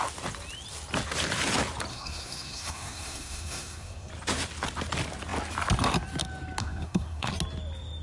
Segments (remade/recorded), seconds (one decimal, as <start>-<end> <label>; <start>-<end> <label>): 0.0-1.9 recorded; 1.9-4.1 remade; 4.1-6.6 recorded; 6.6-7.3 remade; 7.3-8.0 recorded